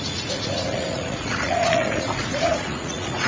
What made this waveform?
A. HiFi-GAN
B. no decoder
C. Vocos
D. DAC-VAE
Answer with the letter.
C